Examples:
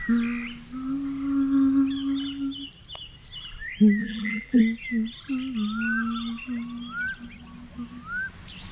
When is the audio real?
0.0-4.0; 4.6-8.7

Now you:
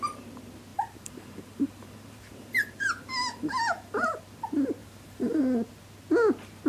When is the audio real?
0.0-0.7; 4.2-4.8; 5.4-6.7

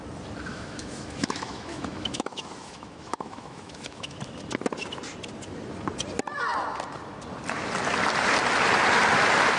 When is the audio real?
0.0-0.5; 4.2-9.6